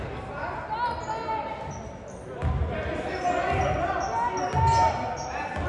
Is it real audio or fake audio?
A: real